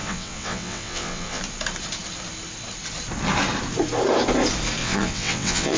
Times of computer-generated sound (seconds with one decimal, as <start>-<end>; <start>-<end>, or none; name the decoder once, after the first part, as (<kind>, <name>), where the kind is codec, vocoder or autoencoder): 0.0-1.4 (vocoder, WaveNeXt); 4.8-5.8